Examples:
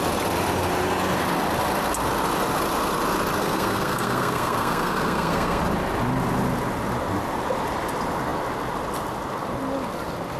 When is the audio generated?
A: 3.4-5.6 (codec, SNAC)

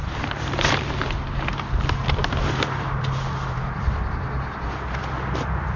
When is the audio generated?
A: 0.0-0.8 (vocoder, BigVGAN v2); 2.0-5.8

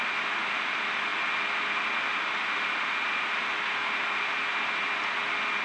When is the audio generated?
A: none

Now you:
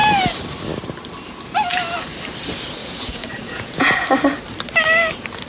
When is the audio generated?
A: 2.8-3.9 (vocoder, Vocos)

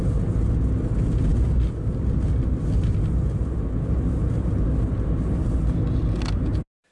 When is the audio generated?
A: none

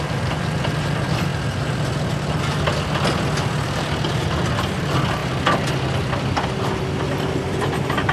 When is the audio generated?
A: 5.2-5.7 (vocoder, BigVGAN v2)

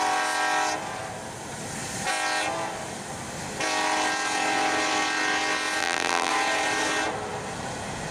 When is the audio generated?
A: 5.8-6.3 (vocoder, BigVGAN v2)

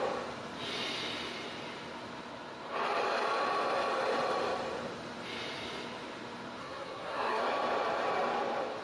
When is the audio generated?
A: 6.6-7.4 (codec, SNAC)